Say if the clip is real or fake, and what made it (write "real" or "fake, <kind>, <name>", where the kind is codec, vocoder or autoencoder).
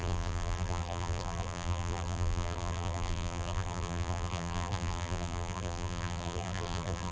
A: fake, vocoder, BigVGAN v2